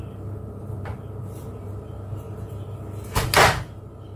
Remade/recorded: recorded